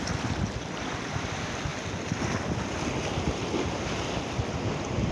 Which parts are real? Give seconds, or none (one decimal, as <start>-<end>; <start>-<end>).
0.0-5.1